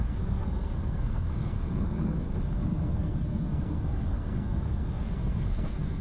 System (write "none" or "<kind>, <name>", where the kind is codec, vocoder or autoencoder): codec, SNAC